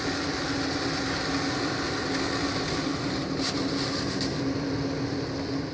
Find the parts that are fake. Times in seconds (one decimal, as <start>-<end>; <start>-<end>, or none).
none